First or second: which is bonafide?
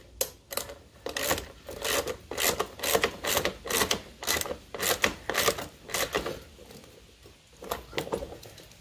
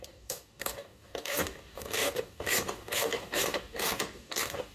first